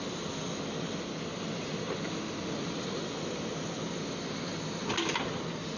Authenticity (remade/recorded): recorded